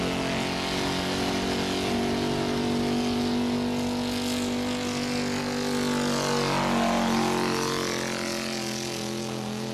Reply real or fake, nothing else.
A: real